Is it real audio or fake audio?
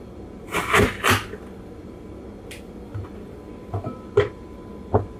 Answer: real